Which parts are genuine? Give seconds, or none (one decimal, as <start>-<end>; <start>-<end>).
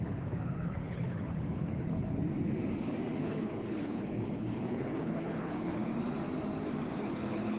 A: 2.2-3.2; 5.8-7.0